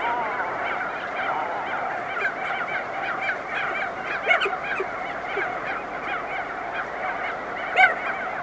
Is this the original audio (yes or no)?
yes